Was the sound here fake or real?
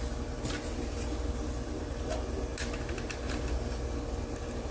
real